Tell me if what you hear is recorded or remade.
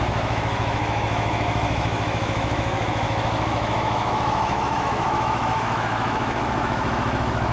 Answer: remade